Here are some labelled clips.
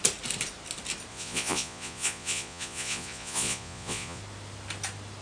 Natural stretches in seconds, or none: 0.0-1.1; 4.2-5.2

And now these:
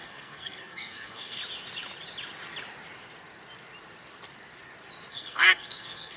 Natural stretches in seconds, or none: 1.4-5.1

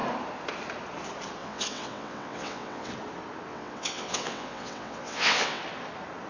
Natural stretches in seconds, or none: 0.0-1.4; 2.9-3.5; 5.6-6.3

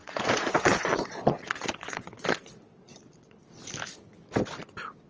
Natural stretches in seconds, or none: 3.4-5.1

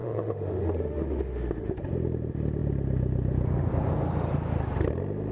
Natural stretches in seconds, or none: 1.8-5.3

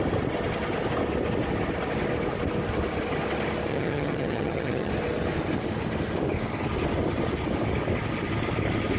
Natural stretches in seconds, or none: 0.0-3.7; 4.9-9.0

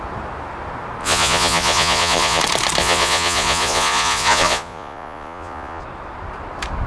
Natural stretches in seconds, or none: 0.0-1.0; 2.4-2.8; 5.8-6.9

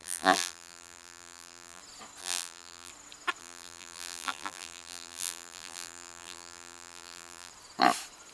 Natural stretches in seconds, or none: 1.8-2.2; 2.9-3.4; 7.5-8.3